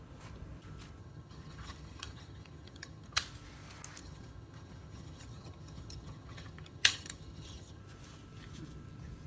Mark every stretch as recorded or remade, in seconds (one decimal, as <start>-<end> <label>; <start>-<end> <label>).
0.0-1.0 recorded; 1.0-3.2 remade; 3.2-4.0 recorded; 4.0-7.8 remade; 7.8-9.3 recorded

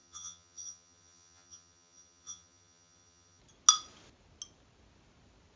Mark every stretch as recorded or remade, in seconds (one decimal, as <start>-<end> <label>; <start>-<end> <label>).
0.0-3.4 remade; 3.4-5.6 recorded

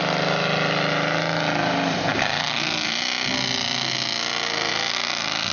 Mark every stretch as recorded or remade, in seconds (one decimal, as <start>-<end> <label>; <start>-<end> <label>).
0.0-5.5 recorded

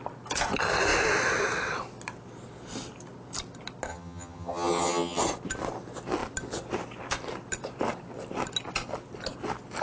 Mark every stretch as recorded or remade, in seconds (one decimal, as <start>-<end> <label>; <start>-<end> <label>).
0.0-3.9 recorded; 3.9-5.2 remade; 5.2-9.8 recorded